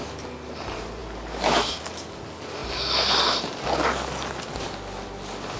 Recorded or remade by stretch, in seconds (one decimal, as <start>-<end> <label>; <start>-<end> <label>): 0.0-5.6 recorded